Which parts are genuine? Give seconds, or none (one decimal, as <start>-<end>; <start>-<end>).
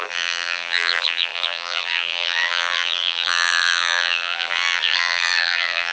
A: none